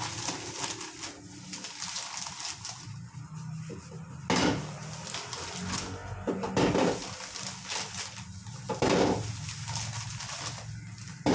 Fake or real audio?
real